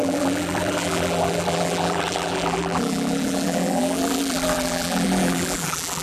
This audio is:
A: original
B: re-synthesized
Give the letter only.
B